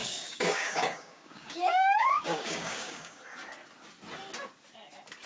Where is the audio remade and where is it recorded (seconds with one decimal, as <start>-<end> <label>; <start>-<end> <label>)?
0.0-3.2 remade; 3.2-5.3 recorded